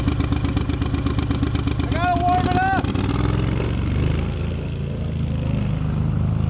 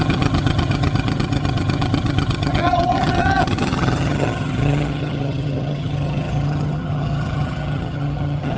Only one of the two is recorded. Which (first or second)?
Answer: first